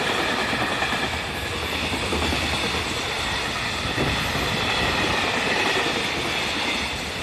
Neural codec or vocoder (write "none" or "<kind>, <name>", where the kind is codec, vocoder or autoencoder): none